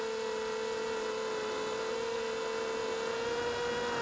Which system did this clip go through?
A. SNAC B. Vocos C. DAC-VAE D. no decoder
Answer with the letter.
D